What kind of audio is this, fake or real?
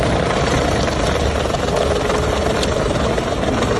real